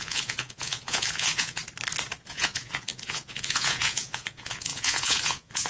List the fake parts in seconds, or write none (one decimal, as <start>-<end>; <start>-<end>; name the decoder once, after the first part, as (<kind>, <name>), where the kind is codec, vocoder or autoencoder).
0.0-1.6 (vocoder, Vocos); 2.3-5.7